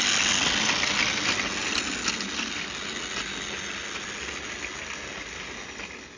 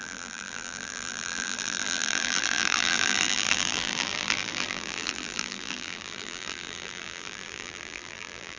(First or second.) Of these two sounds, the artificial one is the second